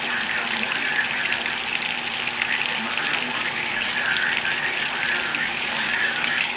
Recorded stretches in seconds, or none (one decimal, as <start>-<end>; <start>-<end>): 0.0-3.3; 3.9-5.3